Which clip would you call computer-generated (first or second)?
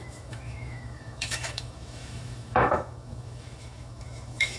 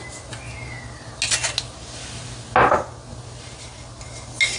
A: first